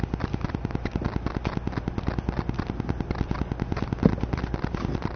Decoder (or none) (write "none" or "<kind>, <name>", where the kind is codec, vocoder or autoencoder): none